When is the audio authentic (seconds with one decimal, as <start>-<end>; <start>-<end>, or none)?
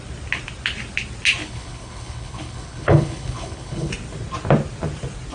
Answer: 0.0-1.4; 3.9-5.3